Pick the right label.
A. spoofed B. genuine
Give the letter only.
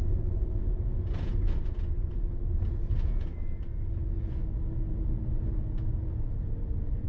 A